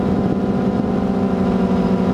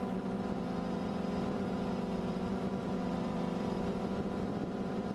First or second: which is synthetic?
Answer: second